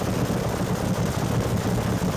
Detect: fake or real real